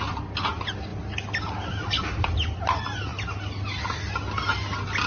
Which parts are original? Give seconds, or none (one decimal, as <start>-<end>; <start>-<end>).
0.0-5.1